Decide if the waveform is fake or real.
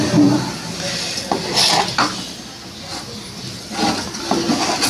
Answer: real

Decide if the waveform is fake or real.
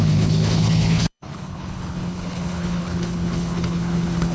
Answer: fake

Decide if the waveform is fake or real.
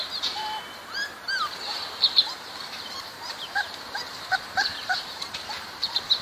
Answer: fake